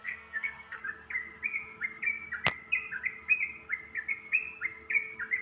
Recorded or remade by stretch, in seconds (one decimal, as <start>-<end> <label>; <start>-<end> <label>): 0.0-0.8 remade; 0.8-5.4 recorded